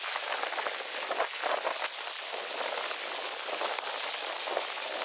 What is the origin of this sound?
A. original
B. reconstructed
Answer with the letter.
A